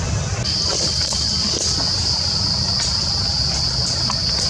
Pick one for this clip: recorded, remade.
recorded